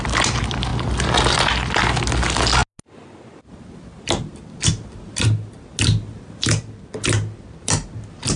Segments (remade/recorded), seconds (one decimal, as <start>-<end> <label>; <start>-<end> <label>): 0.0-8.4 recorded